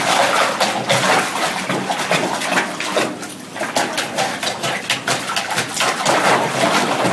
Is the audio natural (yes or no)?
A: yes